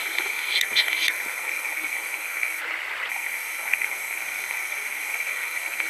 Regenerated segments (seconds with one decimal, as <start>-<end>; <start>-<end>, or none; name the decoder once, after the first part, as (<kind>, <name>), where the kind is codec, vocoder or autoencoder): 0.0-2.6 (codec, SNAC); 3.1-5.9